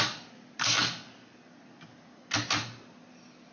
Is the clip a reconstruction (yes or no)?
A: no